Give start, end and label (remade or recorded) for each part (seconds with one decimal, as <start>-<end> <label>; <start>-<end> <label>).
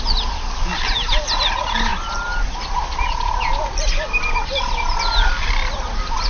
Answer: 0.0-6.3 recorded